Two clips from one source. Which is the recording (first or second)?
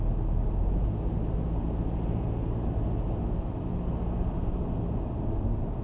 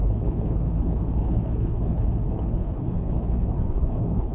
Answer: first